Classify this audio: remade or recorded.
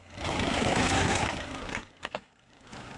remade